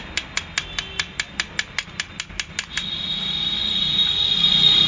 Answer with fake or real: real